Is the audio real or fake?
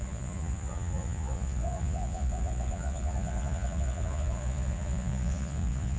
fake